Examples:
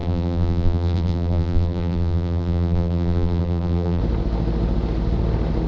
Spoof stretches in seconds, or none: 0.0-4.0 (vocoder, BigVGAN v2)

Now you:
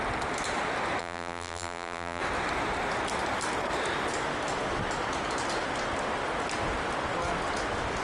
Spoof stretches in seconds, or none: 1.0-2.2 (vocoder, BigVGAN v2)

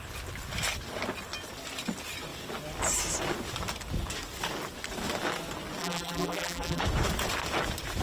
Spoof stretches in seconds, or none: 5.8-6.8 (vocoder, BigVGAN v2)

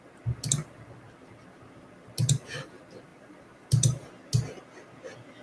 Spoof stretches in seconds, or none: 3.1-4.1 (vocoder, BigVGAN v2)

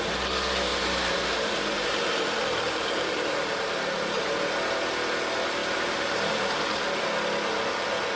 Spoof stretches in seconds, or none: 0.7-4.4 (vocoder, BigVGAN v2); 5.6-6.8

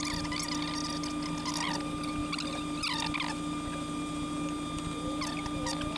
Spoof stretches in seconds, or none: none